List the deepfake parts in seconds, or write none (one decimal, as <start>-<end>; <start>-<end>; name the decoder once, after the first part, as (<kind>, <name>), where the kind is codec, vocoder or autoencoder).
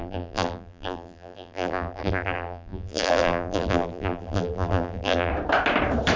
0.0-5.3 (vocoder, BigVGAN v2)